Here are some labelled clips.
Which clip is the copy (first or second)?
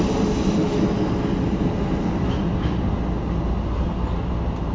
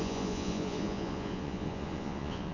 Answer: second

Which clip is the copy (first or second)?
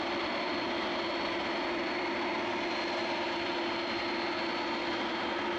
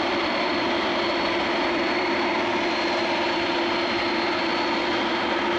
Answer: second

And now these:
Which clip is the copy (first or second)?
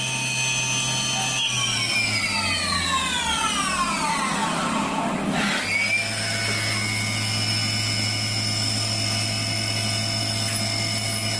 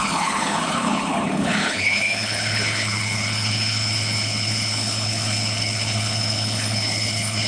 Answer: second